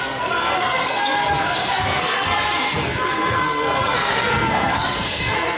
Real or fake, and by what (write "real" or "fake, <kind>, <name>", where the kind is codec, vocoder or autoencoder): fake, codec, SNAC